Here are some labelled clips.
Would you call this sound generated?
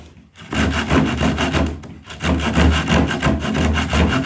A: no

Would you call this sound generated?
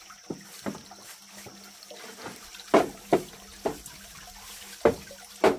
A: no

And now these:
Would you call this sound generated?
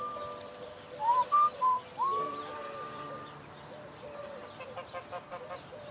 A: yes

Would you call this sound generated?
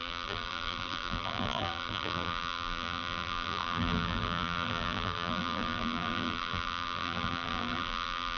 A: yes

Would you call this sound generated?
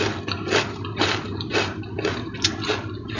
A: no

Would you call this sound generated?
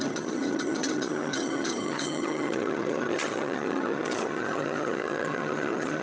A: yes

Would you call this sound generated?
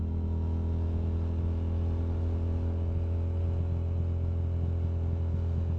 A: no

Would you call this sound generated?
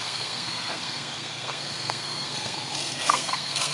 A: yes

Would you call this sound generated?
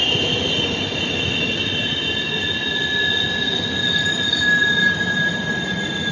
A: no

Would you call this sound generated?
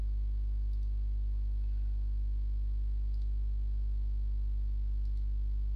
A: no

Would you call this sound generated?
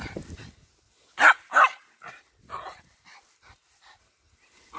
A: no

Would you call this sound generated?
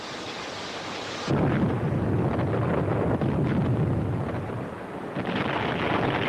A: no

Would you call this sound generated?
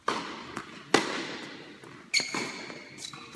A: no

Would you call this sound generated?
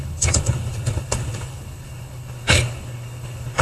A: yes